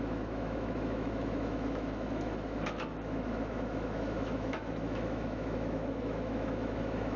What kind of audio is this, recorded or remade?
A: remade